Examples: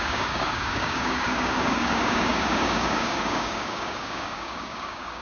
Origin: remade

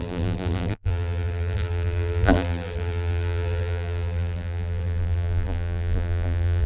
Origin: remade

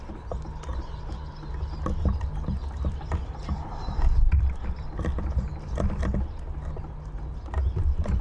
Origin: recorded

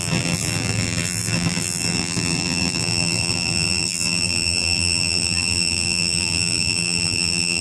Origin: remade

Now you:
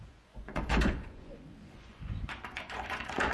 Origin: remade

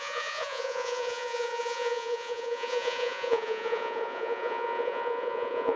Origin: remade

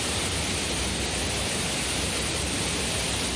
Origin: recorded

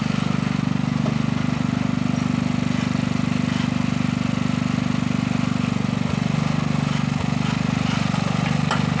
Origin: recorded